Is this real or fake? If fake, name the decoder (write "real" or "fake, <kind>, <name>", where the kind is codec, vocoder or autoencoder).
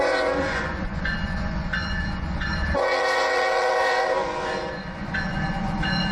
fake, vocoder, Vocos